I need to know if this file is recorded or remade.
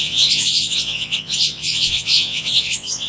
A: remade